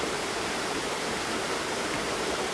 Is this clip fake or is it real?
fake